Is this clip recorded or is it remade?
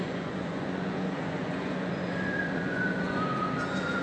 remade